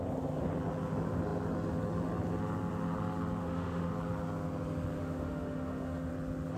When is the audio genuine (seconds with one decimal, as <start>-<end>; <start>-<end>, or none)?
0.0-3.4; 3.9-5.0; 6.1-6.6